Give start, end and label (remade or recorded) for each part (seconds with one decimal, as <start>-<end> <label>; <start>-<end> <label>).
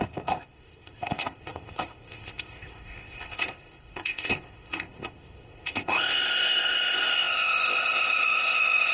0.0-8.9 remade